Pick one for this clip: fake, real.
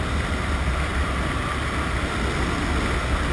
real